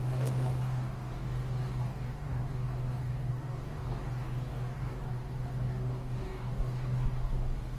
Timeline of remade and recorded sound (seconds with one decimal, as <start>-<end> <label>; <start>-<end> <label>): 0.0-7.8 remade